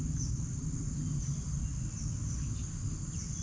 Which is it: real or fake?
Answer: real